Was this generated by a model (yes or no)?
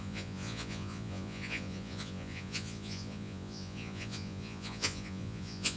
yes